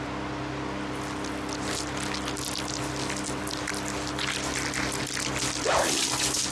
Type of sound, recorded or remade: recorded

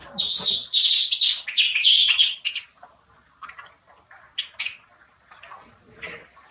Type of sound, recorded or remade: recorded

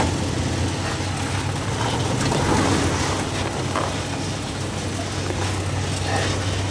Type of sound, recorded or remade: recorded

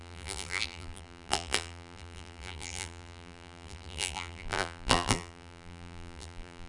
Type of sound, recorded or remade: remade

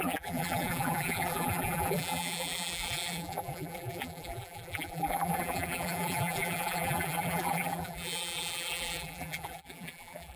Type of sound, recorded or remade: remade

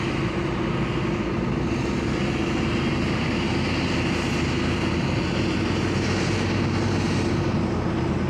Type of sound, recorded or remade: recorded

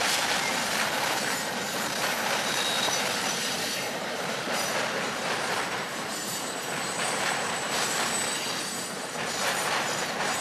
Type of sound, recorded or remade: remade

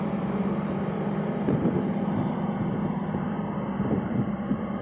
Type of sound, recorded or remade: remade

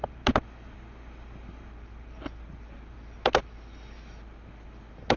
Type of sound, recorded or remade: recorded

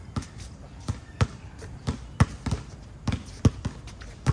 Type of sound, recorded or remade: recorded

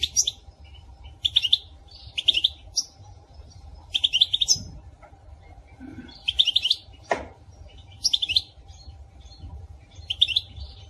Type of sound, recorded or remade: remade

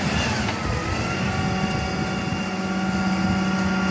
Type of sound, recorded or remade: recorded